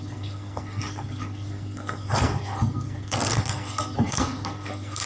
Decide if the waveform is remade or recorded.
remade